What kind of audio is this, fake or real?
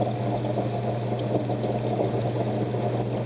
real